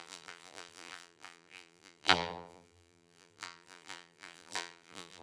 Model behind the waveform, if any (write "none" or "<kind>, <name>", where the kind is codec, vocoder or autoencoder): vocoder, BigVGAN v2